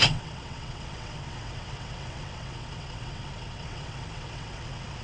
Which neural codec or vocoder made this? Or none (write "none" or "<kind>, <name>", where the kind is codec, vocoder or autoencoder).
vocoder, WaveNeXt